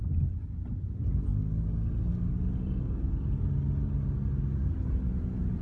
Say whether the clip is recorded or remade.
recorded